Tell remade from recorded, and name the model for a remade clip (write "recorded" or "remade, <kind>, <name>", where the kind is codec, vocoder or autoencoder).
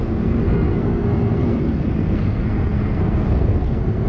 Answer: remade, codec, SNAC